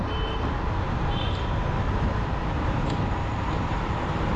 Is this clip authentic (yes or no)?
no